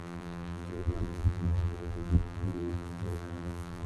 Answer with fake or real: fake